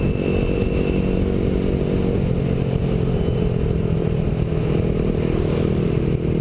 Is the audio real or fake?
real